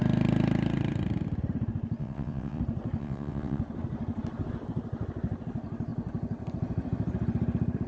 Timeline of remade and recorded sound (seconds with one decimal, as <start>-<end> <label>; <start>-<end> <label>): 0.0-2.0 recorded; 2.0-2.6 remade; 2.6-3.0 recorded; 3.0-3.6 remade; 3.6-7.9 recorded